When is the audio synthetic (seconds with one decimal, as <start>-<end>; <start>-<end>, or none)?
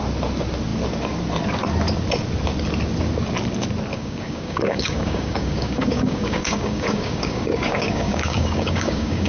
3.9-9.3